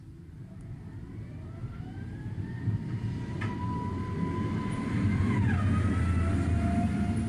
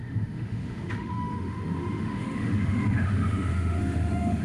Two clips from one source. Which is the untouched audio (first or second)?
first